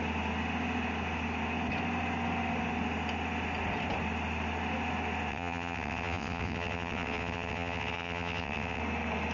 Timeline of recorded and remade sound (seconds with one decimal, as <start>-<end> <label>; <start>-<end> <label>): 0.0-5.3 recorded; 5.3-8.8 remade; 8.8-9.3 recorded